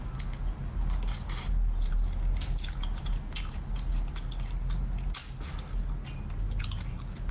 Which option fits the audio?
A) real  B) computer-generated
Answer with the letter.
A